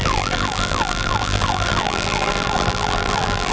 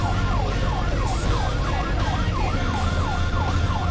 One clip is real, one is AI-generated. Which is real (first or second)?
second